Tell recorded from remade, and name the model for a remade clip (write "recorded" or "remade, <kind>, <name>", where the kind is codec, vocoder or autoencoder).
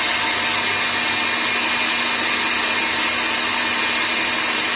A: recorded